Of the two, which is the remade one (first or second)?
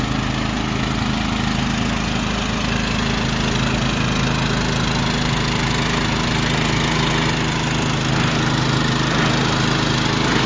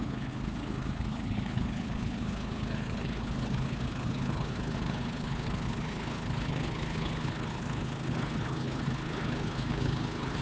second